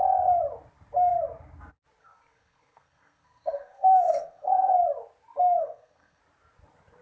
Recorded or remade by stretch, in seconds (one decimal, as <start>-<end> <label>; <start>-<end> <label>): 0.0-2.0 recorded; 2.0-4.7 remade; 4.7-5.6 recorded; 5.6-6.2 remade; 6.2-7.0 recorded